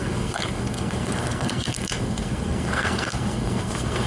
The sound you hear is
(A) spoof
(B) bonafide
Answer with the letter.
A